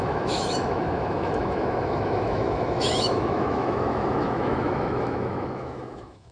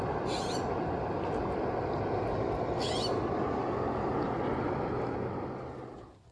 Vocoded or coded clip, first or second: first